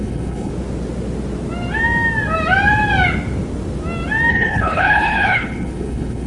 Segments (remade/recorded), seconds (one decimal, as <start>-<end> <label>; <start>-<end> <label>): 0.0-0.5 remade; 0.5-4.3 recorded; 4.3-6.3 remade